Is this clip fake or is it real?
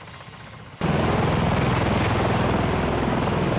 real